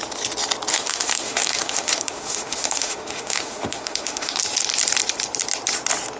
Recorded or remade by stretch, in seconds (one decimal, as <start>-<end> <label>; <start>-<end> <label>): 0.0-0.7 recorded; 0.7-4.4 remade; 4.4-6.2 recorded